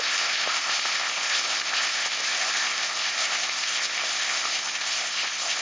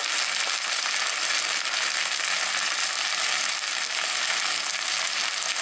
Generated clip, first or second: first